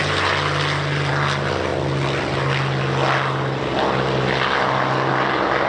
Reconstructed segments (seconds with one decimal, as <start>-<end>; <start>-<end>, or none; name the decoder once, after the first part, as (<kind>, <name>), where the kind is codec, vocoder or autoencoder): none